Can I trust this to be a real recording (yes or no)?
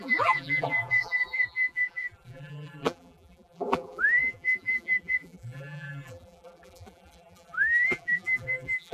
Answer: no